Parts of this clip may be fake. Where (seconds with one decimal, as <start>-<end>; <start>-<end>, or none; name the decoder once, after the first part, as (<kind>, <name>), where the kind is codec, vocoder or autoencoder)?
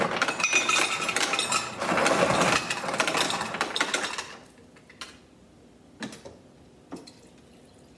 none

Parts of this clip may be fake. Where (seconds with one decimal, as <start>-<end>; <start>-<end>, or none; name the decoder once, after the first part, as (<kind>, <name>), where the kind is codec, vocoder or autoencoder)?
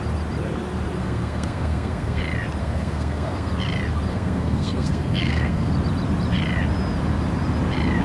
1.0-2.2 (codec, SNAC); 2.6-3.5; 4.1-5.7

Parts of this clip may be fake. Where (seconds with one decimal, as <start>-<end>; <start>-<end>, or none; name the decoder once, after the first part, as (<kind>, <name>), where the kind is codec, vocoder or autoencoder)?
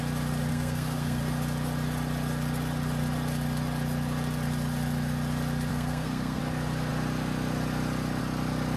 0.5-1.2 (codec, SNAC); 5.7-6.4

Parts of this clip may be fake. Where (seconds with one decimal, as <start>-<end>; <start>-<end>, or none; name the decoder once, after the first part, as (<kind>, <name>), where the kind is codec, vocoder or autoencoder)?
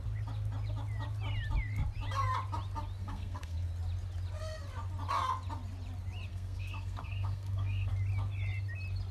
3.0-3.7 (codec, SNAC); 6.3-7.9